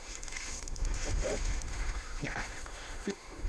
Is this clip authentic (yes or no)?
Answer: no